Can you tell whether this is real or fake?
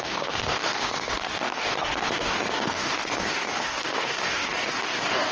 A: fake